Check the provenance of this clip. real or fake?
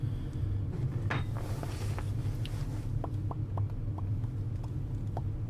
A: real